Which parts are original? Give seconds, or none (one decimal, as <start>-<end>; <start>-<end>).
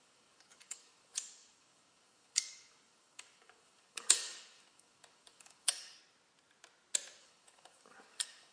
6.0-7.2